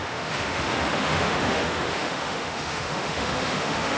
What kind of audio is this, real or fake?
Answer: fake